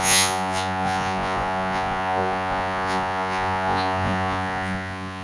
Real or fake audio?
fake